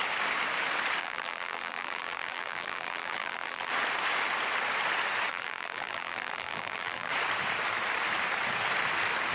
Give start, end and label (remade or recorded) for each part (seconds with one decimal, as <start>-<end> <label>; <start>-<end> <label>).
0.0-1.0 recorded; 1.0-3.7 remade; 3.7-5.3 recorded; 5.3-7.1 remade; 7.1-9.3 recorded